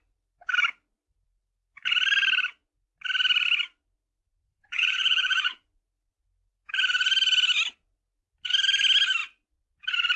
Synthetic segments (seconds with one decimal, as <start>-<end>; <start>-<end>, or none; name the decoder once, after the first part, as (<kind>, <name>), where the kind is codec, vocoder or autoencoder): 4.4-5.8 (vocoder, Vocos)